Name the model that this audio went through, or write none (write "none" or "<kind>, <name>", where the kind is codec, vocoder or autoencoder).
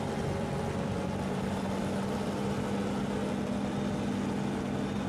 none